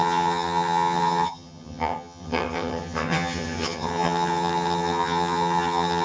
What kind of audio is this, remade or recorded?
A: remade